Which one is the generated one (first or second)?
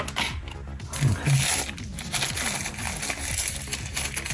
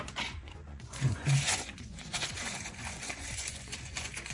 second